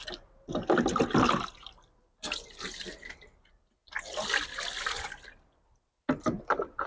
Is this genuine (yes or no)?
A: yes